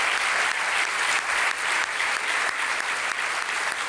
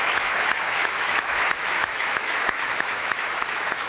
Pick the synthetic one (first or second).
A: second